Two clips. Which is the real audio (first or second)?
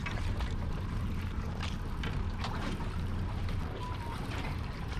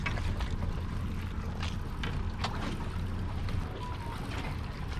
second